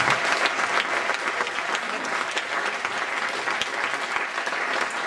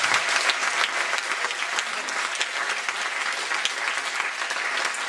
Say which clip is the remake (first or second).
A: first